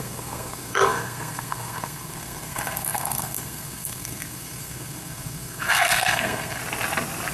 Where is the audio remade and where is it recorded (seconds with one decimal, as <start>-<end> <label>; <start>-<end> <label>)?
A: 0.0-6.6 remade; 6.6-7.3 recorded